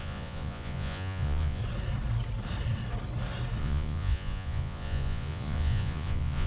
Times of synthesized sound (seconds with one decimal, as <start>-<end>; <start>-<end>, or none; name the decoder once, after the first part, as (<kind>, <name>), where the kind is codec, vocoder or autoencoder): 0.0-1.6 (vocoder, Vocos); 3.6-6.5